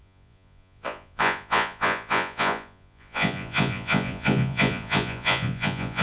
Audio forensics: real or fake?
fake